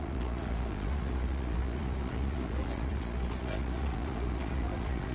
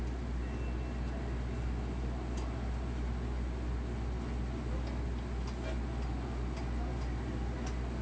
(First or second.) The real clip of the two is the second